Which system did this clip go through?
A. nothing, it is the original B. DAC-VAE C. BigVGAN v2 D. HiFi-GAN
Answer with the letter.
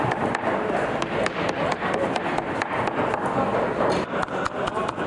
A